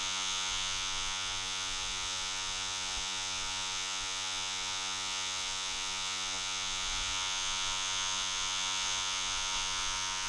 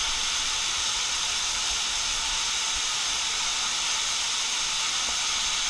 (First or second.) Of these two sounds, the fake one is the first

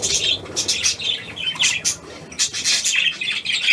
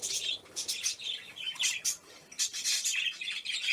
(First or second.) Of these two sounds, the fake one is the second